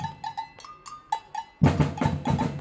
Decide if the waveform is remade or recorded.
recorded